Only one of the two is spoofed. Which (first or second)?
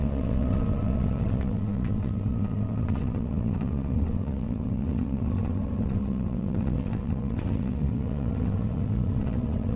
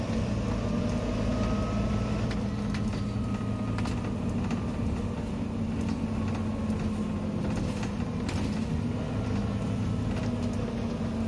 first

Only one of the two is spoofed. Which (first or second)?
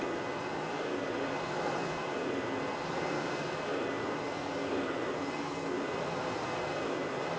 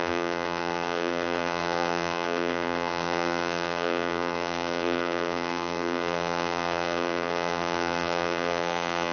second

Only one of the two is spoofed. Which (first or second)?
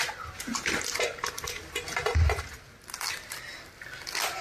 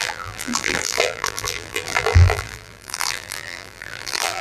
second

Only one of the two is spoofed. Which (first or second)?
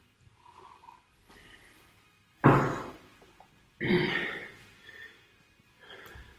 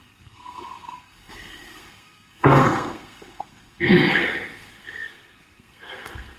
second